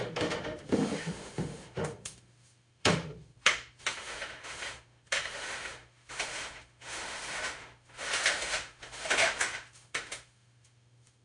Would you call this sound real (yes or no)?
no